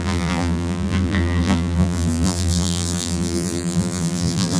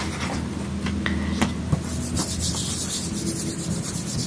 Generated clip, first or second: first